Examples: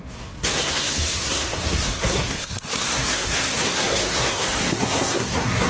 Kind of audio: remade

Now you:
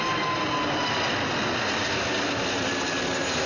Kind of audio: recorded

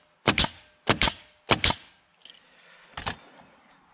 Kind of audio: recorded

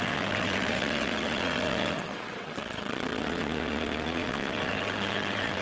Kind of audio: remade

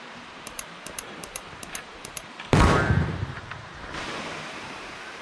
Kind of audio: remade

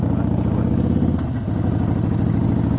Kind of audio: recorded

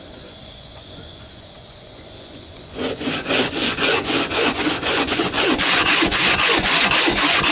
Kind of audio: remade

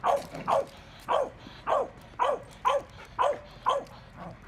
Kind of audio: recorded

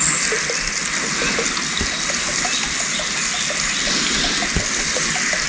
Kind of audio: recorded